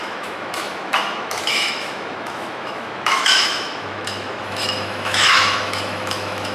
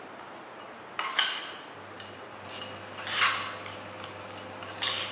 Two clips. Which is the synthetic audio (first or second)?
first